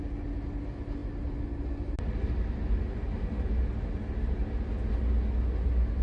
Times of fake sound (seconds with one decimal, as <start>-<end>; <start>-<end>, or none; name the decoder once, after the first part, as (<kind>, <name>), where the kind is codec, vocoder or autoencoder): none